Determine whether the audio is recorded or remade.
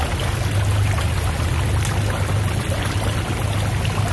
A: recorded